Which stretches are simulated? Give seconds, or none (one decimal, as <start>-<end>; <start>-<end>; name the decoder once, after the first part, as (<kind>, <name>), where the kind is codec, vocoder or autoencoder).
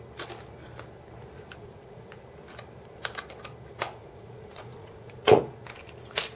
1.6-2.2 (vocoder, Vocos); 4.0-5.4